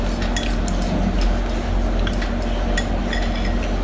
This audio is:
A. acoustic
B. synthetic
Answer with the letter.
A